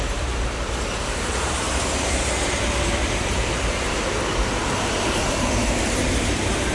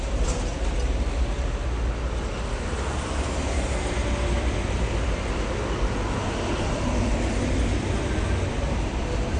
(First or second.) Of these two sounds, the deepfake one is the first